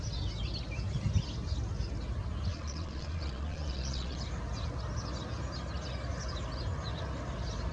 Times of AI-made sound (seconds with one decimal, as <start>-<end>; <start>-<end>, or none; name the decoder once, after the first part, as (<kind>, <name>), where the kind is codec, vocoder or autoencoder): 2.5-4.2 (vocoder, Vocos)